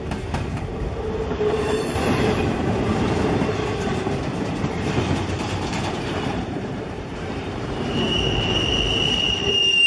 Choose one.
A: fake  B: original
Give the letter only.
A